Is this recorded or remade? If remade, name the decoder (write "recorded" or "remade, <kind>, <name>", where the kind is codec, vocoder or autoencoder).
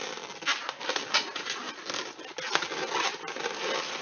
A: recorded